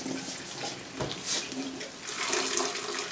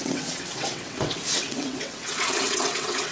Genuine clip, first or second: first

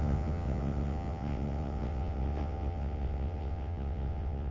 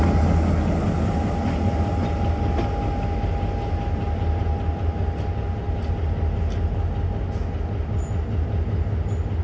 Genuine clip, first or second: second